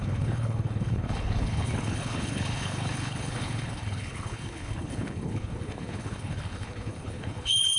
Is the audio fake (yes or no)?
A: yes